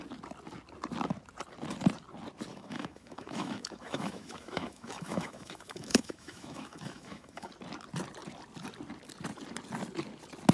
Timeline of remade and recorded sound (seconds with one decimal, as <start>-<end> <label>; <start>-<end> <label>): 0.0-2.5 recorded; 2.5-7.5 remade; 7.5-10.5 recorded